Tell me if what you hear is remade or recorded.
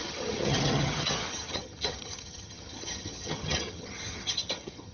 remade